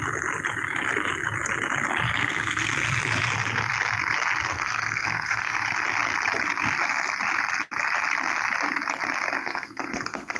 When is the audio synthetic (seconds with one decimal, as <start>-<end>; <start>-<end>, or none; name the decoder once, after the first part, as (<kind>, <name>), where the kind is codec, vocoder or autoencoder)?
2.2-2.7 (codec, SNAC); 4.5-5.6; 9.4-10.4